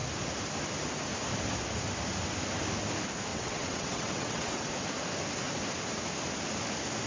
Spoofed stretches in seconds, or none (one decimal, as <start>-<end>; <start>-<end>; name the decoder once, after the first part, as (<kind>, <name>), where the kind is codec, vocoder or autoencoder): 3.3-4.7 (vocoder, WaveNeXt)